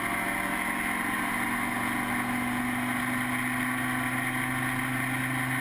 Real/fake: real